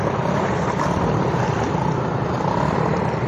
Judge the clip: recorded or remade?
recorded